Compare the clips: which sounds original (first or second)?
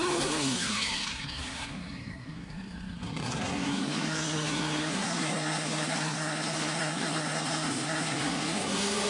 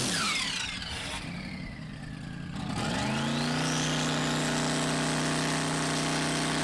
second